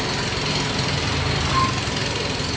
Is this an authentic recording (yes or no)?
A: yes